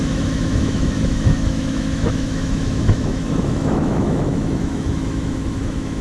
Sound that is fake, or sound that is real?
fake